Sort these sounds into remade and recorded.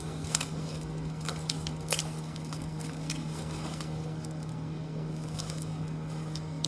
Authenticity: remade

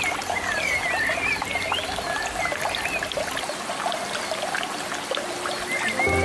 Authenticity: recorded